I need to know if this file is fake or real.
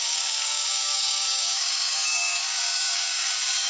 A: fake